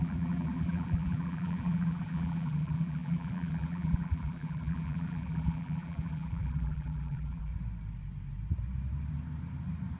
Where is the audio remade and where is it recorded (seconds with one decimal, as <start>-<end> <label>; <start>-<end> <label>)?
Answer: 0.0-7.5 remade; 7.5-10.0 recorded